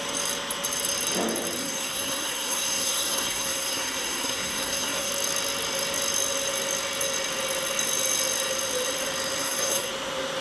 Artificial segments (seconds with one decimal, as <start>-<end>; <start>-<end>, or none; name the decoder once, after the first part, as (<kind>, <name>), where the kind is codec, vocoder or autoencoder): 1.6-5.1 (codec, SNAC); 9.4-9.9